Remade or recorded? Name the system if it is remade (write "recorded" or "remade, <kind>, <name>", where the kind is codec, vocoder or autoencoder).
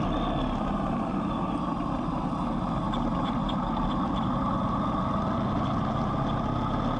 recorded